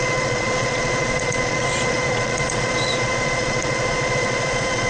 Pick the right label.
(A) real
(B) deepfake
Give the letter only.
B